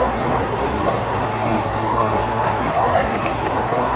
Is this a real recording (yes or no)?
no